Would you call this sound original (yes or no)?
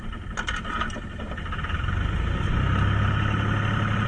yes